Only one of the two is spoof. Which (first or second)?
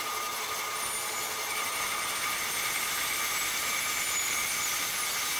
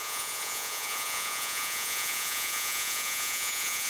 second